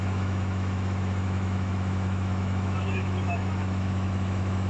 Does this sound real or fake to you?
fake